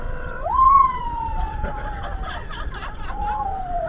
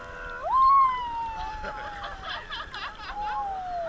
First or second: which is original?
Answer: second